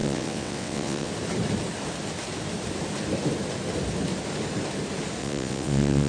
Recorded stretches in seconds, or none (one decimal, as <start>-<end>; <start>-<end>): 1.1-5.2